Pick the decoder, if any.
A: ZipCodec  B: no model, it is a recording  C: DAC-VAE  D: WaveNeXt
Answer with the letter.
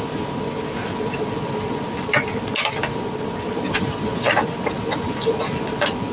B